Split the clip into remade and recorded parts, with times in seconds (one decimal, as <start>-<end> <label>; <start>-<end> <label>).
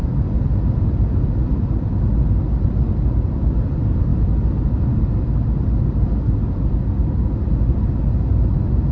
0.0-8.9 recorded